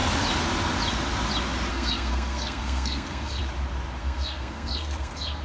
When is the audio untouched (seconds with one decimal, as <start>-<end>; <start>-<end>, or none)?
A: 0.0-1.7; 3.4-4.0